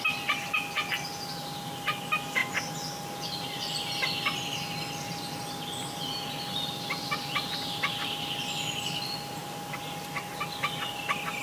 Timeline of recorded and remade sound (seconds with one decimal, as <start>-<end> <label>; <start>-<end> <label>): 0.0-11.4 recorded